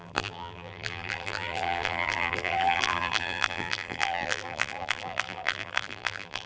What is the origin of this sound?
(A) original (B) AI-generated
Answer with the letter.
B